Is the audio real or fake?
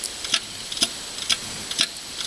real